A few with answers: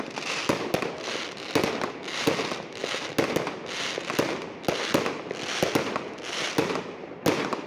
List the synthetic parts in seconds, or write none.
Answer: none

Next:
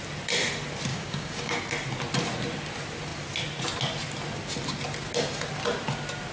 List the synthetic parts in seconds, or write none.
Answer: 0.9-1.6 (codec, DAC)

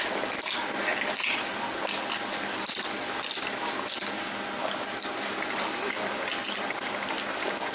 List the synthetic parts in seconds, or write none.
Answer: none

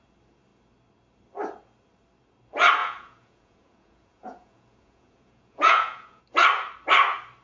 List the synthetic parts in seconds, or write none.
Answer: 2.8-6.2 (vocoder, Vocos)